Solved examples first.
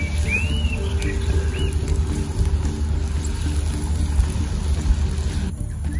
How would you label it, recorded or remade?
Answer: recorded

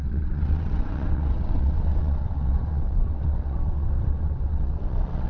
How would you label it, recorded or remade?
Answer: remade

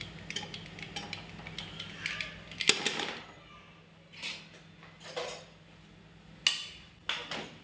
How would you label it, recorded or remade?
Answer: recorded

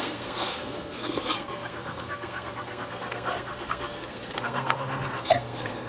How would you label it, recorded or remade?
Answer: remade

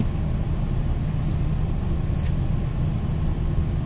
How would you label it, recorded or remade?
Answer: recorded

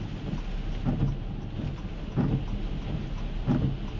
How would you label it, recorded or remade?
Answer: recorded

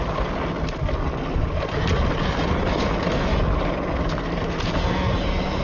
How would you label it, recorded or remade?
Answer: recorded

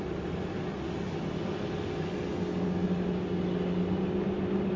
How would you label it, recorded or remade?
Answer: recorded